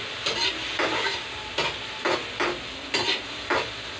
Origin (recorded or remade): recorded